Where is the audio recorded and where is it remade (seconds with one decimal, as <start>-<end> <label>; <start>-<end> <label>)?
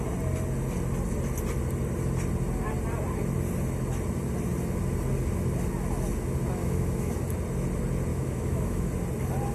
0.0-6.6 recorded; 6.6-7.1 remade; 7.1-8.1 recorded; 8.1-8.9 remade; 8.9-9.5 recorded